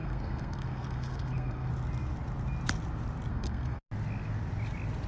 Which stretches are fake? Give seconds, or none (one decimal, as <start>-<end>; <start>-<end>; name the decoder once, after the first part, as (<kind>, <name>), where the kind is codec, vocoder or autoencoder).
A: 0.0-1.7 (codec, SNAC); 3.3-3.8